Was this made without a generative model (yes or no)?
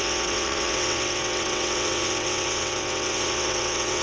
no